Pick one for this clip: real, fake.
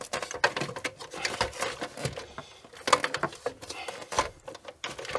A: real